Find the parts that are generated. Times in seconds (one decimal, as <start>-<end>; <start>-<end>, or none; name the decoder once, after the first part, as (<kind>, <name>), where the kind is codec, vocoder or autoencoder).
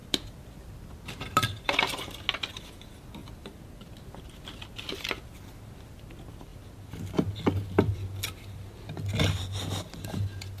none